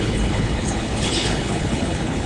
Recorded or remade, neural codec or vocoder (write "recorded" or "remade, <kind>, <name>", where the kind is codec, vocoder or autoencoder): remade, codec, HILCodec